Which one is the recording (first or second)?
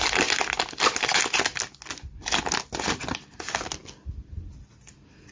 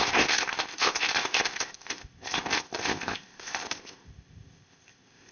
first